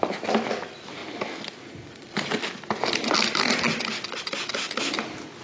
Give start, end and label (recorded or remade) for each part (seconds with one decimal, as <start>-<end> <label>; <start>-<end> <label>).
0.0-5.4 recorded